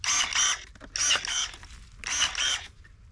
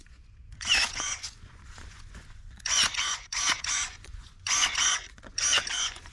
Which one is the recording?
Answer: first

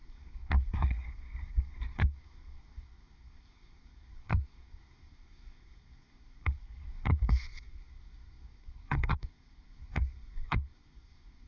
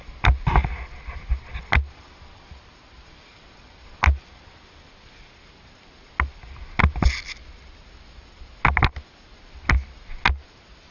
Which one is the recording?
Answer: second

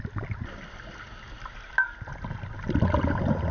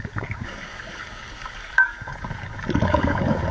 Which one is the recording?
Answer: first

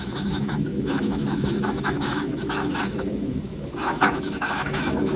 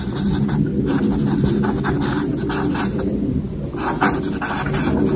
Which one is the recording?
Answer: second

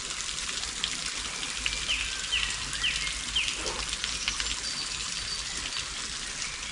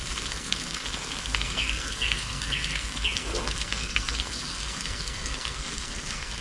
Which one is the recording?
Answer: first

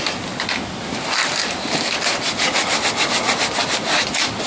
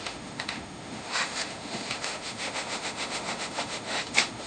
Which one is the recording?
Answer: first